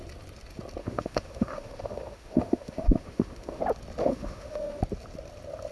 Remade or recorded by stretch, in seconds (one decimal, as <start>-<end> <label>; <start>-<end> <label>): 0.0-0.8 recorded; 0.8-3.6 remade; 3.6-4.0 recorded; 4.0-4.8 remade; 4.8-5.7 recorded